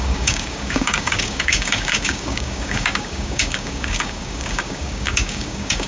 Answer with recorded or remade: remade